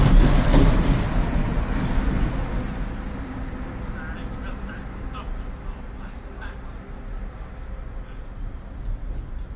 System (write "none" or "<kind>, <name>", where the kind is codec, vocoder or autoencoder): none